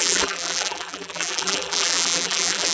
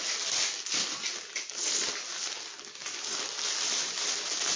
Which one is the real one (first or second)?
second